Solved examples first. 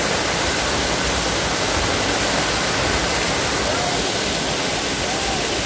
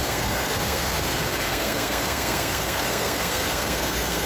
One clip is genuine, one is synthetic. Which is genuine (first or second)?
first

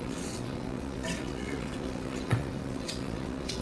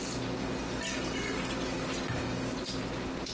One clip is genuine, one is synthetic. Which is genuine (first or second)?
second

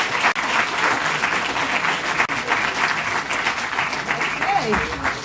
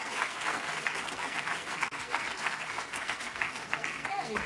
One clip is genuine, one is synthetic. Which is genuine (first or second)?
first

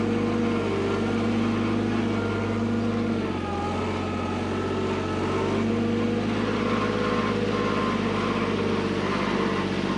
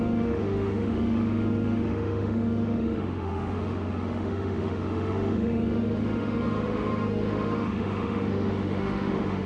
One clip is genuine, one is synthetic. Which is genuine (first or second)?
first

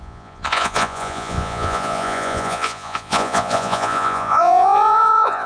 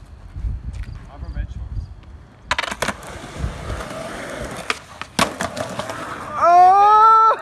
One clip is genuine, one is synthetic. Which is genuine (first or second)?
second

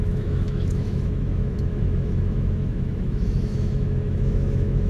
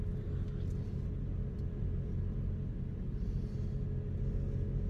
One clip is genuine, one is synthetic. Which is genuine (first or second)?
second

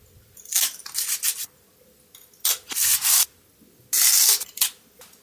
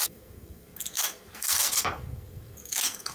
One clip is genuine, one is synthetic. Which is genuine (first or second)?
first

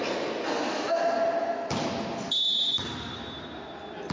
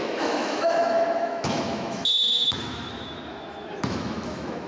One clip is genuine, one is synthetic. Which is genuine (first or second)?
first